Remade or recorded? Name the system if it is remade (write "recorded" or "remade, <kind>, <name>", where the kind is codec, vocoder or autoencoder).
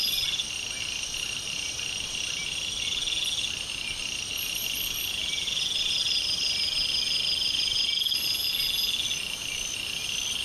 recorded